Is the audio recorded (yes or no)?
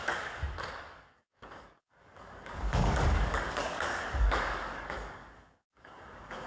no